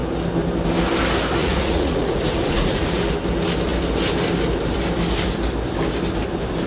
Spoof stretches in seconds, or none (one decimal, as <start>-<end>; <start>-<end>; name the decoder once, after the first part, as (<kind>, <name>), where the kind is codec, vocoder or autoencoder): 1.4-3.0 (vocoder, Vocos)